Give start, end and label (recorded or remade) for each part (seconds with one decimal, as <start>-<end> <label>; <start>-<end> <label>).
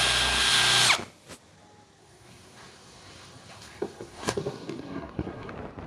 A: 0.0-2.0 recorded; 2.0-5.5 remade; 5.5-5.9 recorded